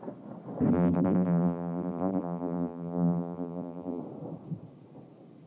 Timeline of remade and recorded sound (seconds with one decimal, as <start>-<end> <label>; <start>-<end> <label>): 0.0-0.7 recorded; 0.7-4.0 remade; 4.0-5.5 recorded